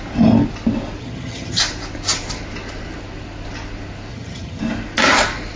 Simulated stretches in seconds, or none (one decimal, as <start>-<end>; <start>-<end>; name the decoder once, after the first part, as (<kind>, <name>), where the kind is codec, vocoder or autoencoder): 1.0-1.6 (vocoder, HiFi-GAN); 4.1-4.6